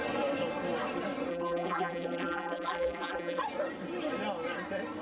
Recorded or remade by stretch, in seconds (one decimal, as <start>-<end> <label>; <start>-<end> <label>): 0.0-1.3 recorded; 1.3-3.4 remade; 3.4-5.0 recorded